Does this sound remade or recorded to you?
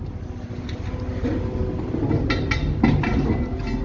recorded